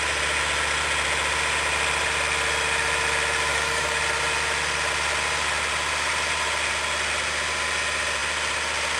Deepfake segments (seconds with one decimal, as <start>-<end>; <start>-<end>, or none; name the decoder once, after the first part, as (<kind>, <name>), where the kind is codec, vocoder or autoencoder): 3.5-4.0 (codec, DAC)